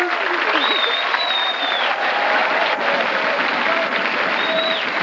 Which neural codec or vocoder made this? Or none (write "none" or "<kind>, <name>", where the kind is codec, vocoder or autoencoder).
none